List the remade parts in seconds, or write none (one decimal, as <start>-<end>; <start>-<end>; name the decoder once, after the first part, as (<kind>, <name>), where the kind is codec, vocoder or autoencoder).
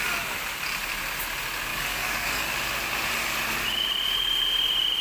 1.7-2.5 (codec, DAC)